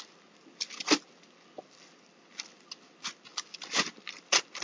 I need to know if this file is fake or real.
real